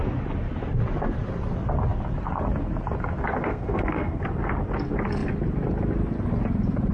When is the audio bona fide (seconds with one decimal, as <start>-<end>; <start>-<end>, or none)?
0.0-3.4; 4.2-6.9